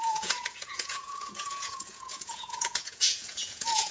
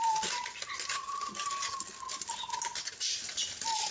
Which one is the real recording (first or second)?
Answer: second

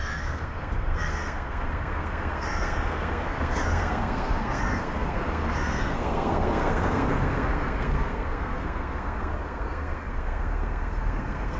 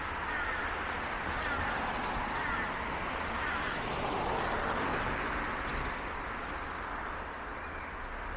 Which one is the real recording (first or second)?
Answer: second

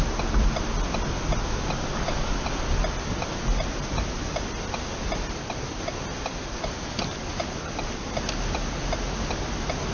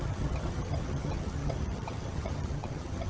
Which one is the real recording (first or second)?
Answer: first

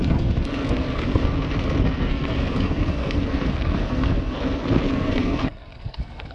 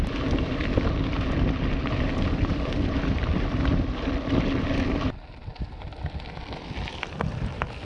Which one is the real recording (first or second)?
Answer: second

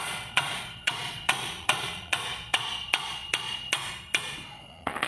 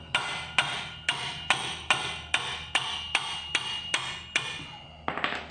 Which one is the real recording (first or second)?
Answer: second